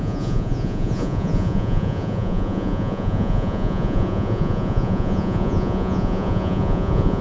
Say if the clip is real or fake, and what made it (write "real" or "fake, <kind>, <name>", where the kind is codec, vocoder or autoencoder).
fake, vocoder, Vocos